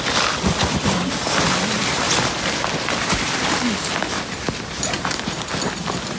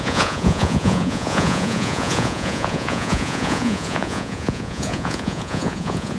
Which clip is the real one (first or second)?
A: first